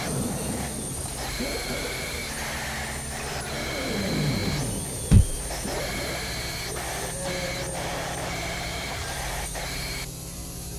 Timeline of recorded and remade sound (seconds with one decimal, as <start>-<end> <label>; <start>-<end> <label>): 0.0-2.2 remade; 2.2-3.3 recorded; 3.3-4.4 remade; 4.4-7.8 recorded; 7.8-10.8 remade